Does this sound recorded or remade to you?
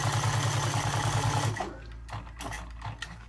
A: recorded